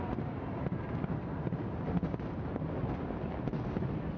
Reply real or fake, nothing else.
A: real